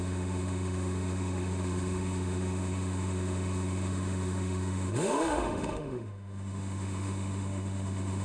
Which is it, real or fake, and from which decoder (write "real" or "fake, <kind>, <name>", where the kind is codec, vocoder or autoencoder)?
fake, autoencoder, DAC-VAE